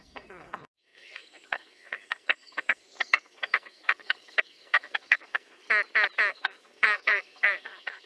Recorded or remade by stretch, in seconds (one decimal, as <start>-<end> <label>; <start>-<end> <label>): 0.0-5.6 remade; 5.6-6.3 recorded; 6.3-8.1 remade